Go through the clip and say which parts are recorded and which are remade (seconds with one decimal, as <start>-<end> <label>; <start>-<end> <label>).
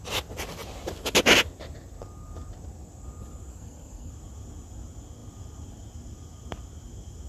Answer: 0.0-3.5 recorded; 3.5-4.1 remade; 4.1-7.3 recorded